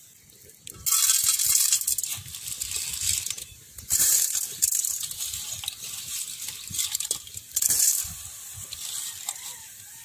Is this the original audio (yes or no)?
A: yes